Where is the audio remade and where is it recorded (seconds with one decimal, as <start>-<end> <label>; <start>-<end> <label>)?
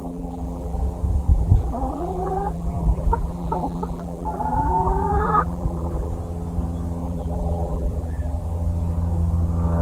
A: 0.0-0.8 remade; 0.8-1.3 recorded; 1.3-6.1 remade; 6.1-7.0 recorded; 7.0-8.4 remade; 8.4-9.8 recorded